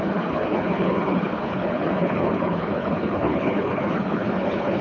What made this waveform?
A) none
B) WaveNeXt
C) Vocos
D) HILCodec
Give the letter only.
D